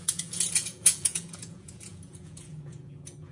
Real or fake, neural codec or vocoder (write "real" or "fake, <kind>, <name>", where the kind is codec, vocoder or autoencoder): fake, vocoder, Vocos